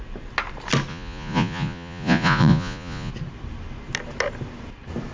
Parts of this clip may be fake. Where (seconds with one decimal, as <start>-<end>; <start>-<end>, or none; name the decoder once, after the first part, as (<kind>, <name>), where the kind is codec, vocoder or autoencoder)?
0.9-3.1 (vocoder, Vocos)